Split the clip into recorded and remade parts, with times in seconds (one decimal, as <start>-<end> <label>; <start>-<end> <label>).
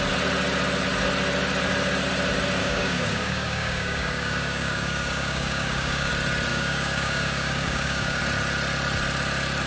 0.0-2.6 recorded; 2.6-6.1 remade; 6.1-6.5 recorded; 6.5-8.2 remade; 8.2-9.7 recorded